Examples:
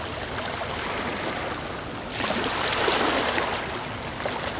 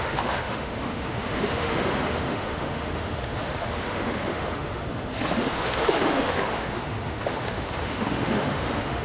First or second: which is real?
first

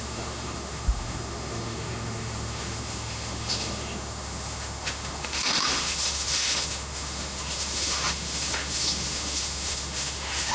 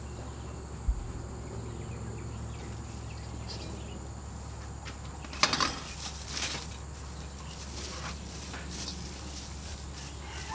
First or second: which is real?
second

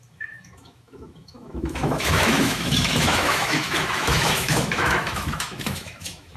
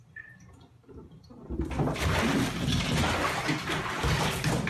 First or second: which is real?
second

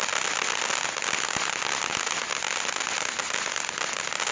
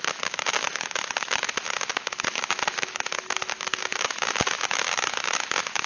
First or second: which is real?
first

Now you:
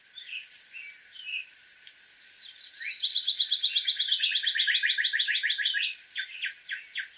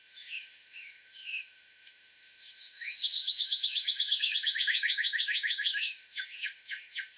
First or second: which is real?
first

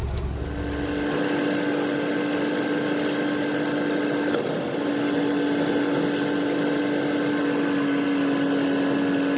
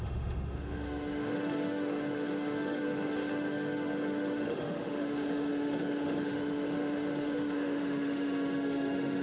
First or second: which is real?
first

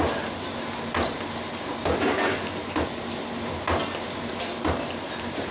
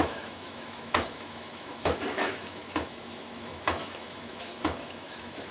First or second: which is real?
first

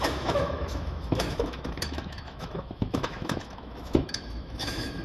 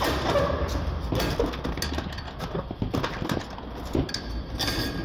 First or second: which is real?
second